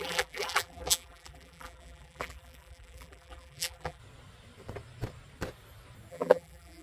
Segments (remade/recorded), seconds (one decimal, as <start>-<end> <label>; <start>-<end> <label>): 0.0-4.0 remade; 4.0-6.1 recorded; 6.1-6.8 remade